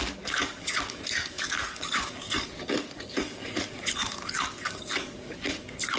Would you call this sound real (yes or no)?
no